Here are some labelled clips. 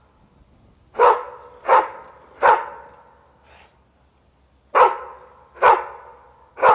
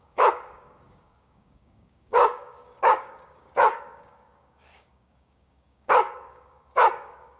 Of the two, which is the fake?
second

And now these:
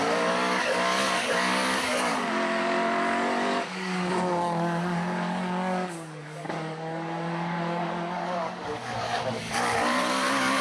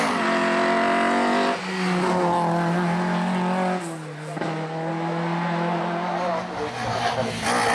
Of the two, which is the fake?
first